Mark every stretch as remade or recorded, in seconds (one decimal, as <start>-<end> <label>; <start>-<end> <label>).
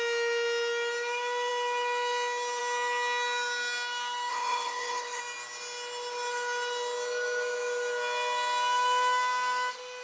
0.0-4.3 recorded; 4.3-5.2 remade; 5.2-10.0 recorded